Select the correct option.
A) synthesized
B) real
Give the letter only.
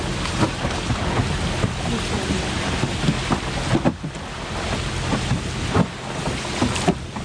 B